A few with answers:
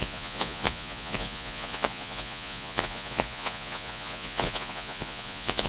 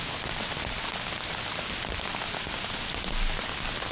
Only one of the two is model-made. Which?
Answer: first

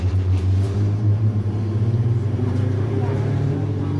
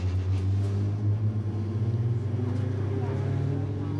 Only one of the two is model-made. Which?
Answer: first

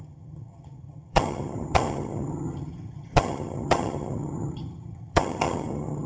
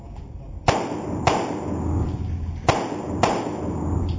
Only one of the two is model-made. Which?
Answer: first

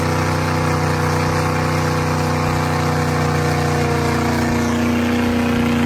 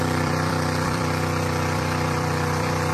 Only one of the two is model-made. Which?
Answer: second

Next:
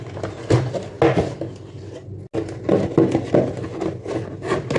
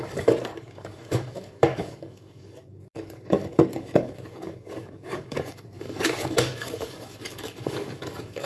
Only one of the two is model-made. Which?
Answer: second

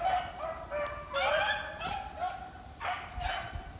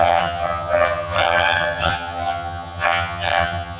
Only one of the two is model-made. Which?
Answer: second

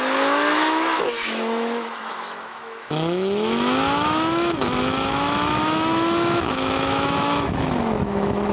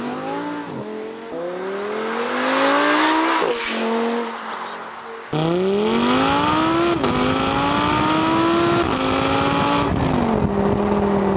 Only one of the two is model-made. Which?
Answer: first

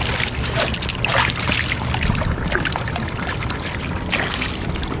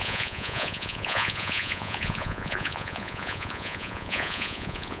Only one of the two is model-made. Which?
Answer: second